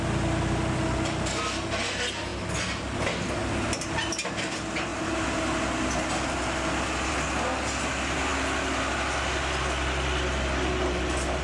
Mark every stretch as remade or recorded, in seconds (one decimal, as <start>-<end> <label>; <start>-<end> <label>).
0.0-11.4 recorded